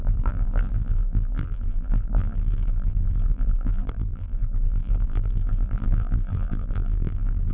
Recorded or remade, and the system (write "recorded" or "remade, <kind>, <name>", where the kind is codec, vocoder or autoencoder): remade, vocoder, BigVGAN v2